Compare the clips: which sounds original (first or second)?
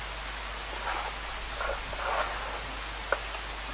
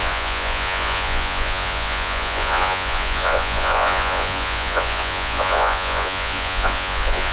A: first